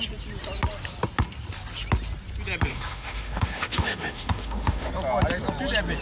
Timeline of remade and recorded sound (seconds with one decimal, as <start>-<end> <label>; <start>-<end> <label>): 0.0-2.7 recorded; 2.7-4.9 remade; 4.9-6.0 recorded